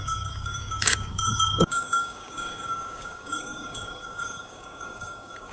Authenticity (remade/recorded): remade